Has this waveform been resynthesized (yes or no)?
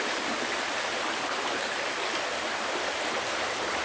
no